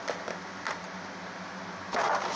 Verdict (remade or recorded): recorded